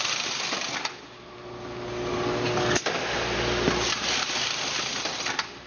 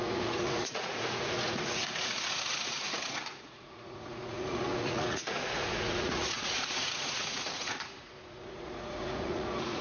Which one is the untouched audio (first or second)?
first